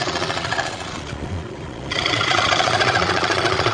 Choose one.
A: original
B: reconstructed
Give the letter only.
B